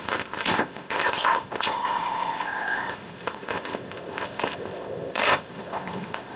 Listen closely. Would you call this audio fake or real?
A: fake